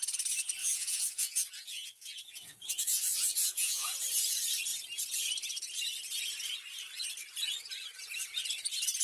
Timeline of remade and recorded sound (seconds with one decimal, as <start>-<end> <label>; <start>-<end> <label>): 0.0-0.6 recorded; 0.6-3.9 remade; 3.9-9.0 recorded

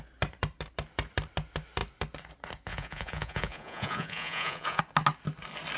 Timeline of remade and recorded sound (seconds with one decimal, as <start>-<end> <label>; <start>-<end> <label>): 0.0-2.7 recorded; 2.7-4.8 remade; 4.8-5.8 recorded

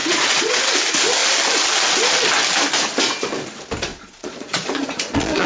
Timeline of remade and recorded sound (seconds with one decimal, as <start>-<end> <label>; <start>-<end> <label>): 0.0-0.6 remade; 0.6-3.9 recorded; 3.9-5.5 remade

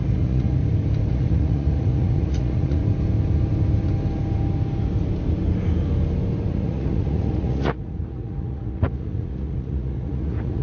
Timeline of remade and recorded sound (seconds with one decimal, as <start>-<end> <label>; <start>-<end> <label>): 0.0-0.6 remade; 0.6-1.1 recorded; 1.1-2.8 remade; 2.8-6.5 recorded; 6.5-10.6 remade

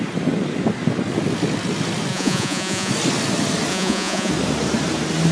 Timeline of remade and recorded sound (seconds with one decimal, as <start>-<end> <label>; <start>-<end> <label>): 0.0-2.1 recorded; 2.1-2.9 remade; 2.9-3.7 recorded; 3.7-4.3 remade; 4.3-5.3 recorded